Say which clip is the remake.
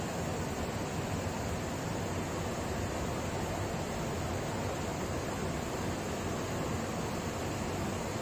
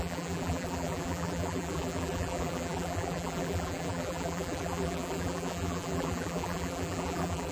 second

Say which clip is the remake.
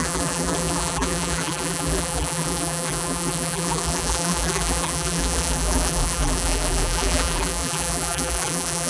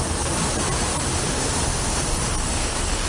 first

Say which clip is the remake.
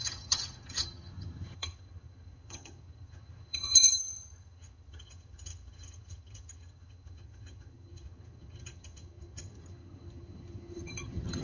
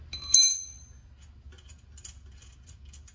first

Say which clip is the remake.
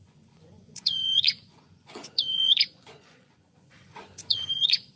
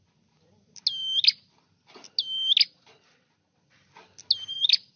first